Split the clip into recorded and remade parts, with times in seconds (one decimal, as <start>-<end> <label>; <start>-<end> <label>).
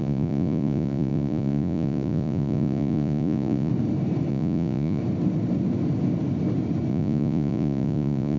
0.0-3.7 remade; 3.7-4.3 recorded; 4.3-5.0 remade; 5.0-6.9 recorded; 6.9-8.4 remade